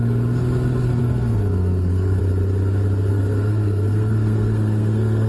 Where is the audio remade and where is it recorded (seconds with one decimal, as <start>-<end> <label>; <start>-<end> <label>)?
0.0-1.0 recorded; 1.0-2.2 remade; 2.2-3.1 recorded; 3.1-5.3 remade